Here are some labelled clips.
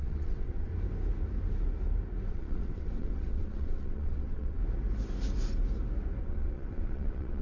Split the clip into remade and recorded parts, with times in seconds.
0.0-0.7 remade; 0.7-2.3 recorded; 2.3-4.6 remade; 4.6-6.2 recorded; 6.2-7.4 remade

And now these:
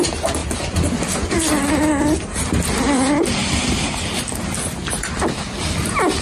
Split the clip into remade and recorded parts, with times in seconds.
0.0-6.2 recorded